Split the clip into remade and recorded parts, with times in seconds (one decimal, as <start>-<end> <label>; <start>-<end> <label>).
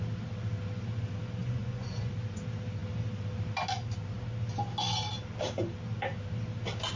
0.0-1.4 recorded; 1.4-2.1 remade; 2.1-7.0 recorded